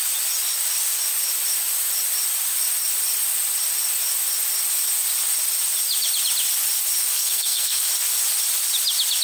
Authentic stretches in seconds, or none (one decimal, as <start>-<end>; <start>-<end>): 0.0-7.0; 7.9-9.2